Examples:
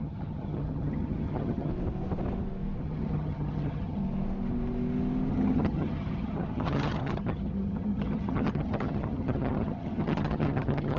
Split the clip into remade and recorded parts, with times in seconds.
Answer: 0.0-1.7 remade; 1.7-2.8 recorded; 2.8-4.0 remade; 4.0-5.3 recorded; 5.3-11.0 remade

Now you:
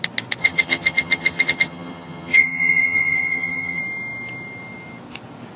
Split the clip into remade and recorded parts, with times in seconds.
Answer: 0.0-0.4 recorded; 0.4-3.8 remade; 3.8-5.6 recorded